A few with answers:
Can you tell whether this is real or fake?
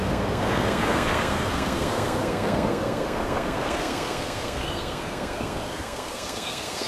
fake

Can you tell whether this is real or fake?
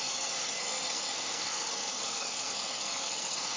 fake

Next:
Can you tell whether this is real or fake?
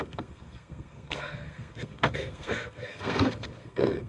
fake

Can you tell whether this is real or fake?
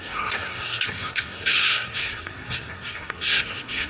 fake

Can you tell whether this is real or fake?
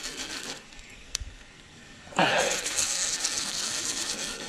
fake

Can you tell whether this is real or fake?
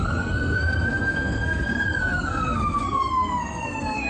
fake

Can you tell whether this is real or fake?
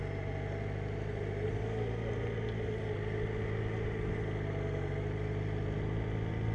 real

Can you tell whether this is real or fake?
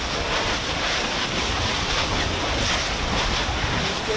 real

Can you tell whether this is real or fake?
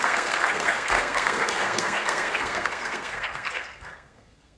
fake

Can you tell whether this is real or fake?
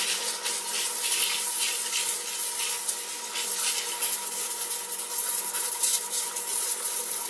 real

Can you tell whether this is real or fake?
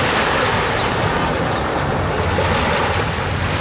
real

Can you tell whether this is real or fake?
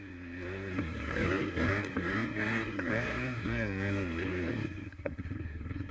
fake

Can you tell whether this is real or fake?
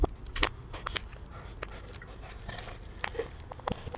real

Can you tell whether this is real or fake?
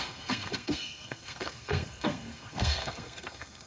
fake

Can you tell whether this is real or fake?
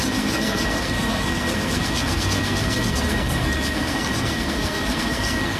fake